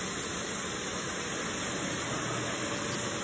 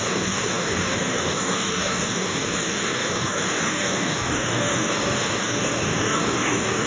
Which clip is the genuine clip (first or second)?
first